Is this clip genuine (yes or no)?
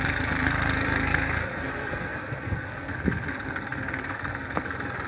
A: no